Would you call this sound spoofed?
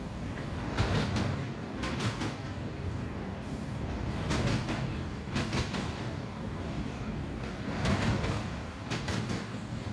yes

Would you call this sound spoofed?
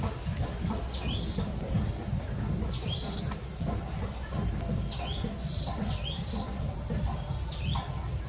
no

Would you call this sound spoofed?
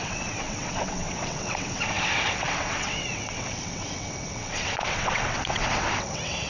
yes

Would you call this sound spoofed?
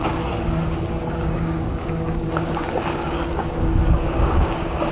yes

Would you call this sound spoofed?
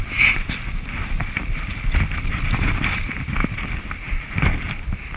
yes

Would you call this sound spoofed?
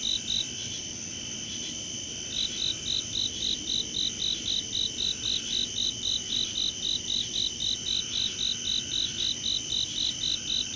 no